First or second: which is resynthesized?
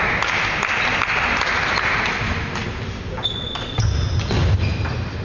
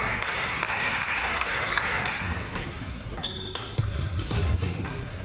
second